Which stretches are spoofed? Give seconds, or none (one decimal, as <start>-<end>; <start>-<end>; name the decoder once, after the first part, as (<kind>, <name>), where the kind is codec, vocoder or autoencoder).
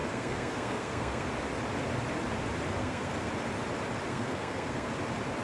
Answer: 0.0-1.3 (codec, SNAC); 2.8-3.3; 4.1-4.9